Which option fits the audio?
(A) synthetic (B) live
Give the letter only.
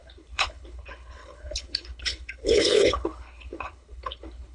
A